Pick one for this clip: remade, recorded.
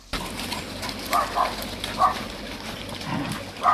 recorded